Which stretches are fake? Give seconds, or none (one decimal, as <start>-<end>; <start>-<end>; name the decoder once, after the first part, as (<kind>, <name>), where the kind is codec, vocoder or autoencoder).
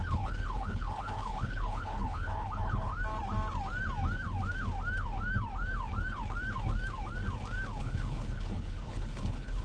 0.0-2.9 (codec, HILCodec); 7.8-9.6